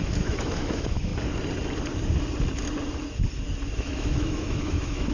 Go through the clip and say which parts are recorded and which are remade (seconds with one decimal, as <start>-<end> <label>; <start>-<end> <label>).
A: 0.0-1.1 remade; 1.1-3.7 recorded; 3.7-5.1 remade